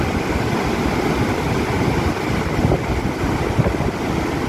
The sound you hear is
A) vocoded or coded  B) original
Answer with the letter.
B